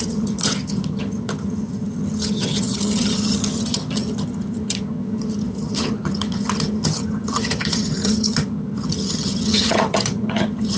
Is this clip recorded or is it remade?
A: remade